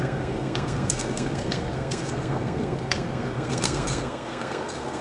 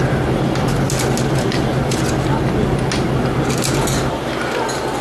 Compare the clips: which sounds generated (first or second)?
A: first